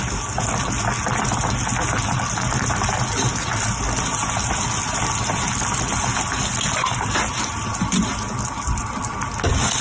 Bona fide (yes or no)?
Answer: yes